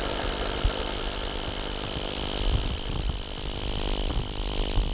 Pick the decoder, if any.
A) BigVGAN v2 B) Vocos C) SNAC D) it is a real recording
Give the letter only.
D